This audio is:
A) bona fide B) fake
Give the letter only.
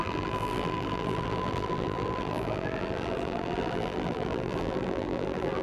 B